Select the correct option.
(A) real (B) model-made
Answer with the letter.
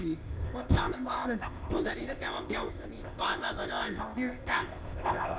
B